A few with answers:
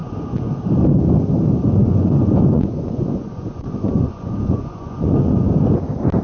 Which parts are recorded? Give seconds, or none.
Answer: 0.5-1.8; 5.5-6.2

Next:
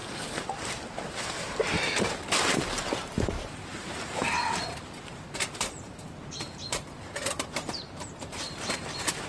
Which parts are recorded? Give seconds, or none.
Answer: none

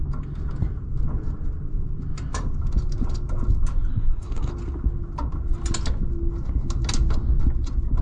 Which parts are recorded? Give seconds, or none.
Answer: 0.0-3.9; 4.5-8.0

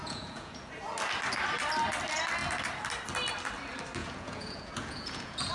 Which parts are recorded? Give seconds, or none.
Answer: 0.7-4.0

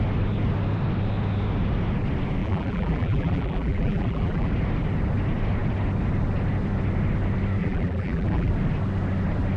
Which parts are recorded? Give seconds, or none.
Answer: 0.0-2.4; 4.5-7.6; 8.5-9.6